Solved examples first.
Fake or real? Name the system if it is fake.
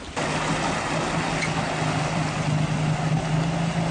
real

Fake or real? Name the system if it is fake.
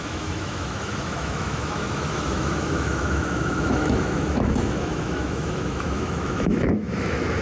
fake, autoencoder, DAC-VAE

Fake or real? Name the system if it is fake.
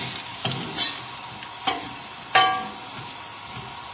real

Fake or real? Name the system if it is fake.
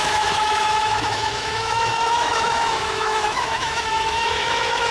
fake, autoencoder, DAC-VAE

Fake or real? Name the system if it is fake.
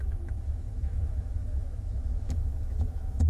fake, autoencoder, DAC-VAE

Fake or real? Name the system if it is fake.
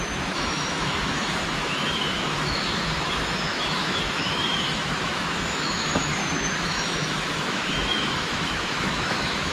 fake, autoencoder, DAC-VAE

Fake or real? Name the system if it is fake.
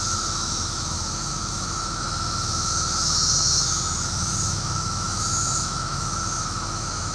fake, autoencoder, DAC-VAE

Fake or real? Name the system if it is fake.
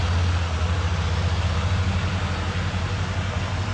real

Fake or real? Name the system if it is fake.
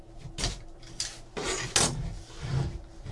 real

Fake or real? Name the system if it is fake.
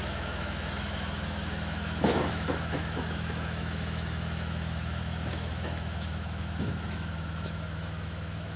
fake, autoencoder, DAC-VAE